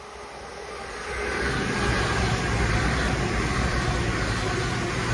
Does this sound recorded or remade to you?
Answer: recorded